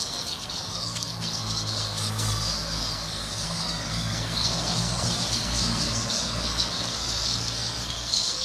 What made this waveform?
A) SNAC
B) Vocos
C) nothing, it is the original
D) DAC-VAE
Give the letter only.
A